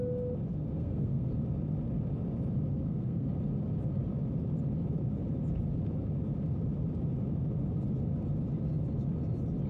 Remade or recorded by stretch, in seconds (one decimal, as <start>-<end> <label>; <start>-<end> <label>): 0.0-0.5 recorded; 0.5-1.3 remade; 1.3-2.7 recorded; 2.7-3.3 remade; 3.3-9.7 recorded